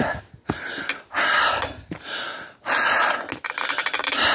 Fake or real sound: real